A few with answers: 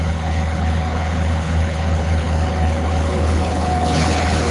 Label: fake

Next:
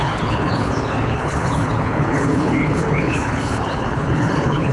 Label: fake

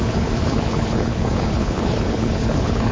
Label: fake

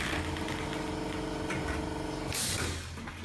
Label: real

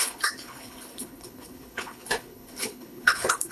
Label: fake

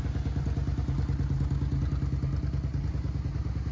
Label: real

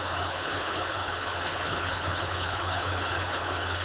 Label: fake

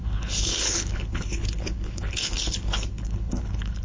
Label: fake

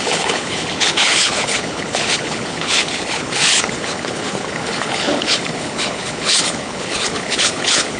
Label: fake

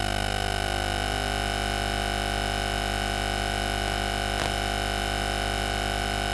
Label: real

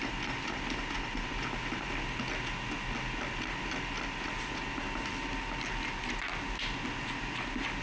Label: real